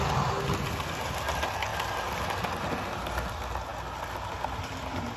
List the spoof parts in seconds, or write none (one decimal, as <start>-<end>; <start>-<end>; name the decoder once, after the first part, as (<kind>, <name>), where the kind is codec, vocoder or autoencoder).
none